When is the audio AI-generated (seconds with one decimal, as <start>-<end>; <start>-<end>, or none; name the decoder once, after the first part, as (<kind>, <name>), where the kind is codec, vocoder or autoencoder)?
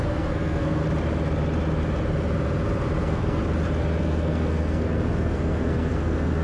0.0-0.8 (codec, SNAC); 3.0-3.4; 4.0-6.4